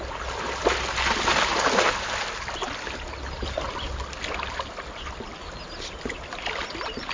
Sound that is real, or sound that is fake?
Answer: real